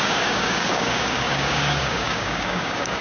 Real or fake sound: fake